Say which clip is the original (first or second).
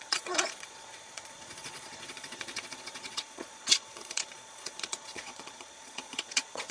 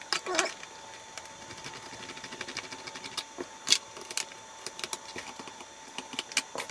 second